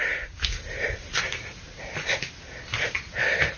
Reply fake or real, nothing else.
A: real